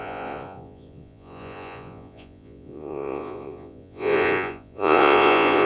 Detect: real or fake fake